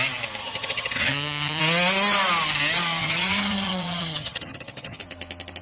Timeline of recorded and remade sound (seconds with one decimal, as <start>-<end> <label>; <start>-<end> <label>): 0.0-0.4 recorded; 0.4-1.6 remade; 1.6-3.0 recorded; 3.0-5.0 remade; 5.0-5.6 recorded